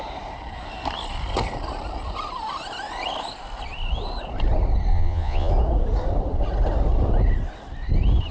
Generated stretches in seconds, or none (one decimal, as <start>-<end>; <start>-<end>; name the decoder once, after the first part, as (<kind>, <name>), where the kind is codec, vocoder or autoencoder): 4.9-5.5 (vocoder, Vocos)